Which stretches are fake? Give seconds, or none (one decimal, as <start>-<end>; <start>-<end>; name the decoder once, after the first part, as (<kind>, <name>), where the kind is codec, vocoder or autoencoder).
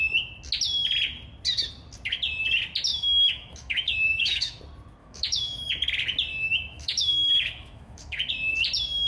2.9-4.6 (autoencoder, DAC-VAE); 5.0-5.7; 6.3-8.3